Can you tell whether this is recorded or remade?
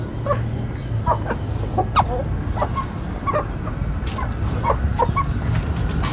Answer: recorded